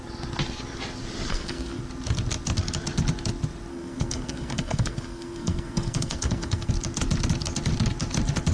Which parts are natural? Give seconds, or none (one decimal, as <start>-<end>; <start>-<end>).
0.0-1.3; 1.8-3.7; 6.7-8.5